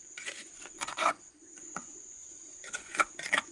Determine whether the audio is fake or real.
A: fake